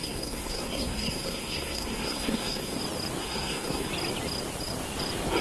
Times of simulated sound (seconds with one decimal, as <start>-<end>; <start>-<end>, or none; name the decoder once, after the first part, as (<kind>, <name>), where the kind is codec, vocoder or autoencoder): 0.0-2.8 (codec, SNAC); 3.2-3.9